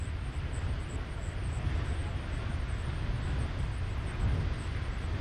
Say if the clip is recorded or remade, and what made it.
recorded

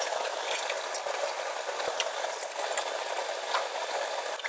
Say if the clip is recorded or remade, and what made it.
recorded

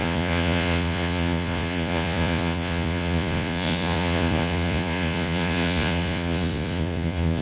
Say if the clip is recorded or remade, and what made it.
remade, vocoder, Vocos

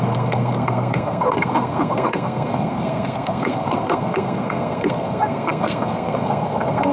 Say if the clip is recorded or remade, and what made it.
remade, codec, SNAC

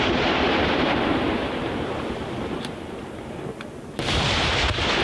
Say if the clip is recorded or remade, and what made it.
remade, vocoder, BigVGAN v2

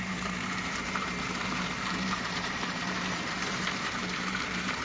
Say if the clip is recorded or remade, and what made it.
remade, vocoder, BigVGAN v2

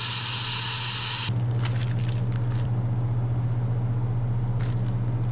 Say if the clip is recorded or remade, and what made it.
recorded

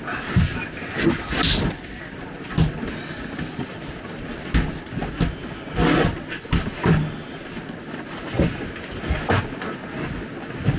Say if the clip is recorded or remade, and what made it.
recorded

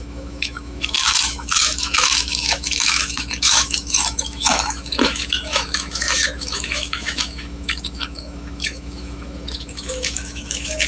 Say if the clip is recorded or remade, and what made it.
remade, autoencoder, DAC-VAE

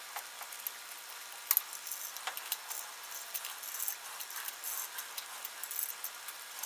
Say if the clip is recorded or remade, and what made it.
recorded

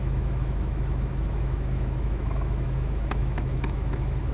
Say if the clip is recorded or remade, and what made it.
remade, autoencoder, DAC-VAE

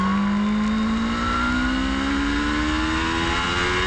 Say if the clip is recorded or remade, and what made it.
recorded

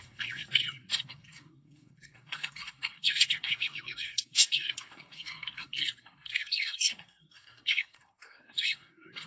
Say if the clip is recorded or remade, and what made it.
remade, codec, SNAC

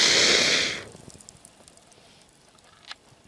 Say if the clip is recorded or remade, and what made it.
recorded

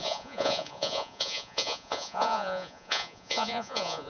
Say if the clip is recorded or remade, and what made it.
remade, vocoder, Vocos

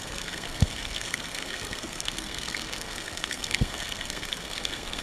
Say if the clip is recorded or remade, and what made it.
remade, codec, SNAC